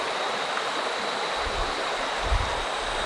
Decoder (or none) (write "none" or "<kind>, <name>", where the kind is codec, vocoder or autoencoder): none